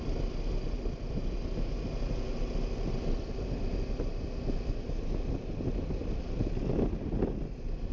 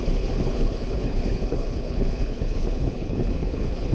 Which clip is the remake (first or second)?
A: second